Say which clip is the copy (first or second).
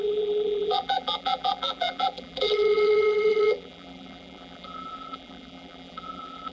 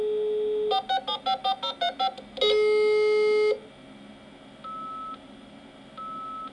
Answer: first